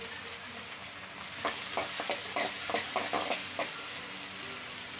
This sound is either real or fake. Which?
real